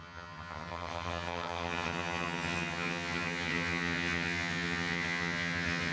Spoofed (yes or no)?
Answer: yes